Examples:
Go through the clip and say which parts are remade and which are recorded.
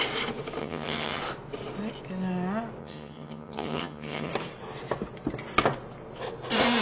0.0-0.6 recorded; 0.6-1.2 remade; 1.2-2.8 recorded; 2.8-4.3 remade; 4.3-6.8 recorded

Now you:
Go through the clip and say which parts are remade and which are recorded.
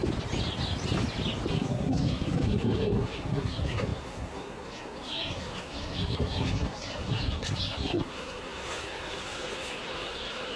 0.0-1.5 recorded; 1.5-10.6 remade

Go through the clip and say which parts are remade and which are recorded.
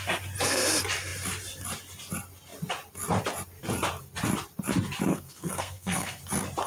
0.0-5.1 recorded; 5.1-6.2 remade; 6.2-6.7 recorded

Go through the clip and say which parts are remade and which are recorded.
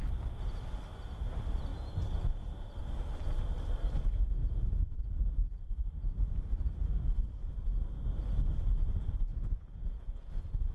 0.0-4.4 recorded; 4.4-5.0 remade; 5.0-9.3 recorded; 9.3-10.7 remade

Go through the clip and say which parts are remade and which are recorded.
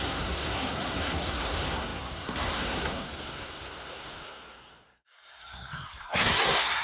0.0-6.8 remade